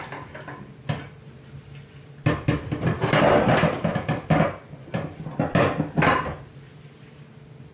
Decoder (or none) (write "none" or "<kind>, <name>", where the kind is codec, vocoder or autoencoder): none